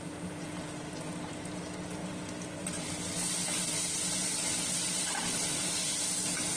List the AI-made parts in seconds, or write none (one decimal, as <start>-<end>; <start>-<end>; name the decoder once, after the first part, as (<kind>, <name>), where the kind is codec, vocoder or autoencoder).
none